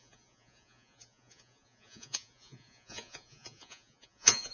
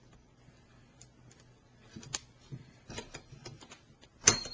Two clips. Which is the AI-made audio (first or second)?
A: first